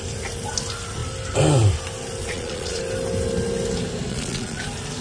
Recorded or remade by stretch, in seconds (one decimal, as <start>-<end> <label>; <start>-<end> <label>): 0.0-2.2 recorded; 2.2-2.8 remade; 2.8-4.1 recorded; 4.1-4.6 remade; 4.6-5.0 recorded